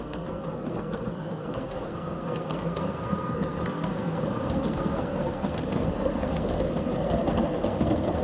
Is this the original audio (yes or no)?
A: no